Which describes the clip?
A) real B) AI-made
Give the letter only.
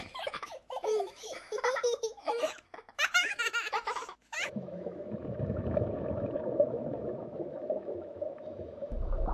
B